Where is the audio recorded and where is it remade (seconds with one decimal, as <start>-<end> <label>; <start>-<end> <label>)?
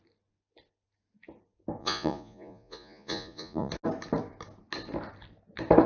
0.0-1.8 recorded; 1.8-3.7 remade; 3.7-5.9 recorded